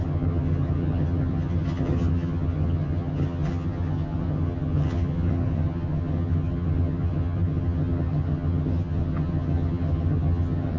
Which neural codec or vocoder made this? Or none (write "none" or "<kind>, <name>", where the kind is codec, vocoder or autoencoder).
vocoder, HiFi-GAN